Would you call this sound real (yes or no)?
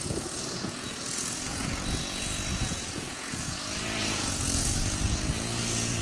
no